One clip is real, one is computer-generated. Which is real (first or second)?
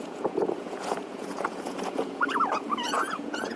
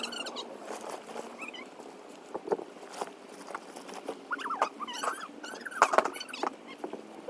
second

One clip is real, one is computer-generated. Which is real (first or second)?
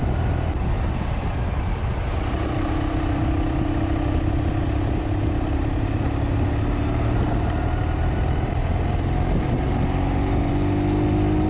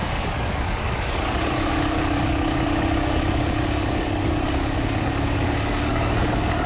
first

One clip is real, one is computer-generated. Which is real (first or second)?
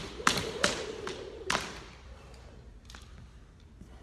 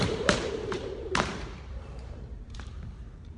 first